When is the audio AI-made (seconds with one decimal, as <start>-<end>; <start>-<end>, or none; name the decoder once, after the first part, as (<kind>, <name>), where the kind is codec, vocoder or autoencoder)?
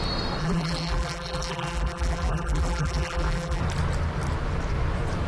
0.4-3.6 (vocoder, BigVGAN v2)